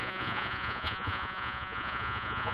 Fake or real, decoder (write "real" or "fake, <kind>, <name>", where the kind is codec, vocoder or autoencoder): fake, vocoder, Vocos